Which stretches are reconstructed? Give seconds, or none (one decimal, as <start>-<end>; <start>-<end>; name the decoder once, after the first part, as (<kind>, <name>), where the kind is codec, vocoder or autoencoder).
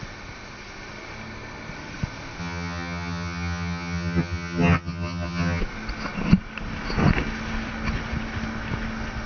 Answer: 2.4-5.6 (vocoder, HiFi-GAN)